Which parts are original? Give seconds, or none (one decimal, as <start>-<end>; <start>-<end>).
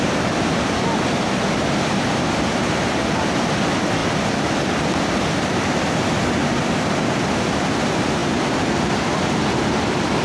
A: 4.0-5.4; 8.2-8.7